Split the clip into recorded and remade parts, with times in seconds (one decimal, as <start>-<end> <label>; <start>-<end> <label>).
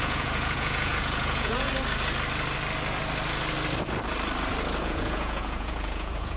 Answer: 0.0-1.7 remade; 1.7-4.8 recorded; 4.8-6.4 remade